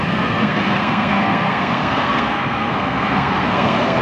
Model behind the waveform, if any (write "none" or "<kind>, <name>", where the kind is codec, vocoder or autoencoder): codec, SNAC